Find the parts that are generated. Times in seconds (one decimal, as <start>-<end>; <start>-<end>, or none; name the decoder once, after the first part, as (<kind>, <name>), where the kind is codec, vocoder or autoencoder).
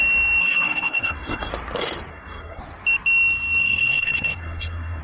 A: 0.4-1.5 (codec, SNAC); 2.1-2.6; 3.6-5.0